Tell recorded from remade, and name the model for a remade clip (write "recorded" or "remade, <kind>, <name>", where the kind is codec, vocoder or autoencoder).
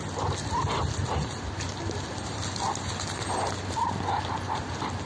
recorded